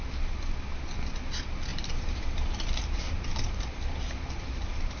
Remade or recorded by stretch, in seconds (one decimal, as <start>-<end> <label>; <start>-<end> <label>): 0.0-1.7 recorded; 1.7-5.0 remade